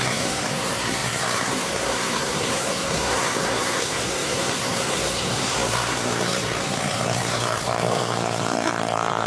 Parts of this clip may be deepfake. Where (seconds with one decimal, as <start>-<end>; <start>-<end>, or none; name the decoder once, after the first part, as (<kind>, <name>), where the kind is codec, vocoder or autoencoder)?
0.0-9.3 (codec, SNAC)